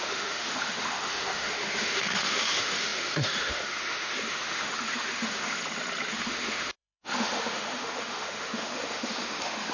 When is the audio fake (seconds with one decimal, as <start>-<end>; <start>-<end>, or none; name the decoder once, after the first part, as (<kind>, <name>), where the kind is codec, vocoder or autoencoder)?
0.0-5.6 (autoencoder, DAC-VAE); 6.1-9.7